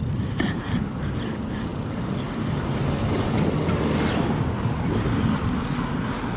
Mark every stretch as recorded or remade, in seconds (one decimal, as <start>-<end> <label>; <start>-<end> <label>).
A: 0.0-6.4 recorded